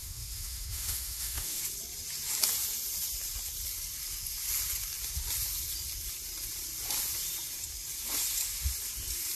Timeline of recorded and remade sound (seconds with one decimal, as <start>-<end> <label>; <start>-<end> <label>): 0.0-1.6 remade; 1.6-9.3 recorded